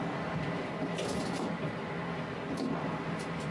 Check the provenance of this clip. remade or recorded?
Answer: recorded